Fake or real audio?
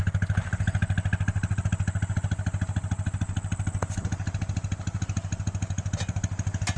real